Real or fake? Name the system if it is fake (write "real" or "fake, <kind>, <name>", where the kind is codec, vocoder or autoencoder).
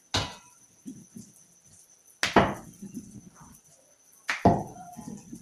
real